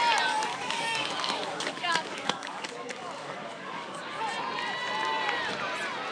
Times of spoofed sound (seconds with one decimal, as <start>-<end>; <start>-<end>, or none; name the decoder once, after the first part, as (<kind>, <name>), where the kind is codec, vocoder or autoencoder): 0.5-4.2 (codec, DAC)